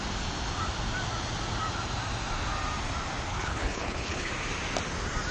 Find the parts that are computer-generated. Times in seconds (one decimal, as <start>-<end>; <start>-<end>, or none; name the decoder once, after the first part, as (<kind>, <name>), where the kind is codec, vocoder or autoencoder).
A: 3.3-4.3 (codec, HILCodec)